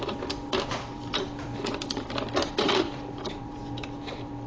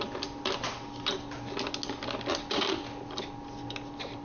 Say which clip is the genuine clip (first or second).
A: second